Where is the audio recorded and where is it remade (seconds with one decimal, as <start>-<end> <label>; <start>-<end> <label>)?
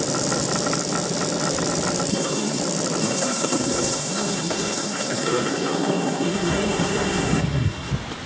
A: 0.0-2.1 recorded; 2.1-2.6 remade; 2.6-3.0 recorded; 3.0-7.9 remade; 7.9-8.3 recorded